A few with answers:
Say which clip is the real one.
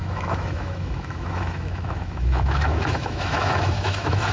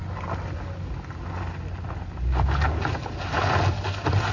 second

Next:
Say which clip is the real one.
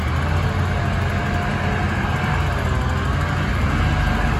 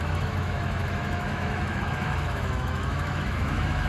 first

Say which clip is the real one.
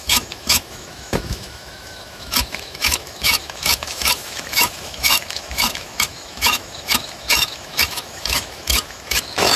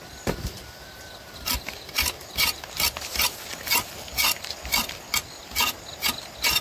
second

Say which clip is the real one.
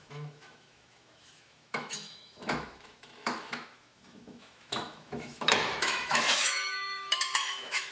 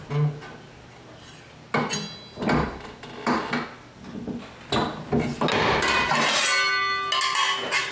second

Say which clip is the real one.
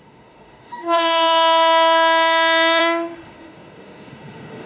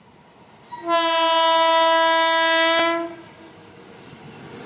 second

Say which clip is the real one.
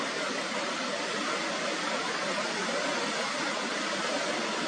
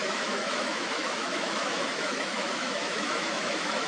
first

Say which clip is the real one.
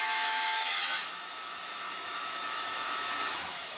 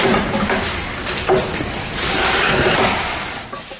second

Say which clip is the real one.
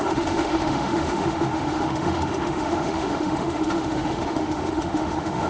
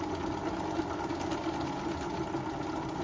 second